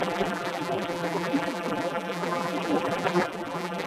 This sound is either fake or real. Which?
fake